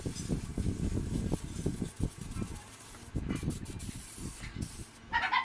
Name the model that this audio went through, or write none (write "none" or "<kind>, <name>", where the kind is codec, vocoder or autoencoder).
none